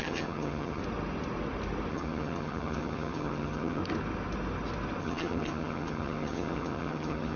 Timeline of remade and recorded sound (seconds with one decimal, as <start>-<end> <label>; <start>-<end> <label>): 0.0-0.8 remade; 0.8-1.9 recorded; 1.9-3.8 remade; 3.8-5.0 recorded; 5.0-7.4 remade